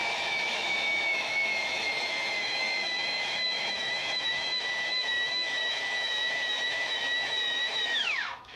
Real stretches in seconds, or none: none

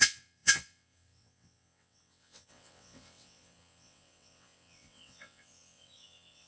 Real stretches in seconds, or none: none

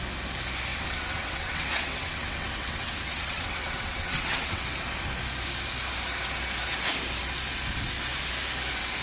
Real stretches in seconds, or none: 0.0-0.7; 4.6-9.0

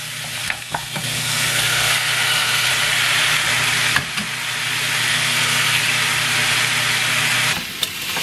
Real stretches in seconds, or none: 0.0-0.4; 2.7-5.1; 5.8-8.2